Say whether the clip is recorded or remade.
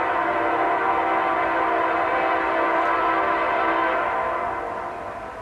recorded